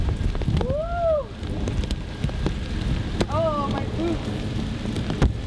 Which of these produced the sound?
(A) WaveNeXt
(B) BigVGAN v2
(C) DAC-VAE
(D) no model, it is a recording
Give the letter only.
D